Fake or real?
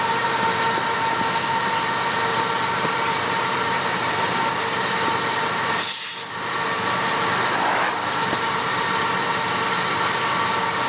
real